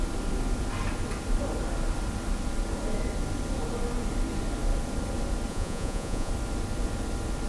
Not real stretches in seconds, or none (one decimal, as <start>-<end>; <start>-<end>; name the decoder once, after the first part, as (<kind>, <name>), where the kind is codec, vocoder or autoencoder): 5.5-6.3 (vocoder, Vocos)